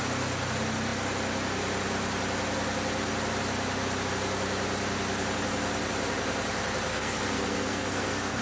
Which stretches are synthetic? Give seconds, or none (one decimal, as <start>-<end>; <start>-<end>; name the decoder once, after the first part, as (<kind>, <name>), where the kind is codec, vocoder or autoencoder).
6.9-8.4 (codec, SNAC)

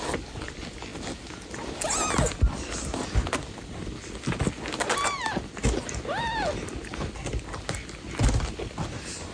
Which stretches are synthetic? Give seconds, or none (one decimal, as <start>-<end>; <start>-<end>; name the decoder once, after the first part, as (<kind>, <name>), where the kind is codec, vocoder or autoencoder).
none